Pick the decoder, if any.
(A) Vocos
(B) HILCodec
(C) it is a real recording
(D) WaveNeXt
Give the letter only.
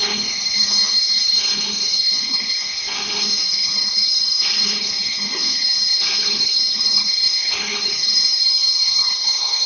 B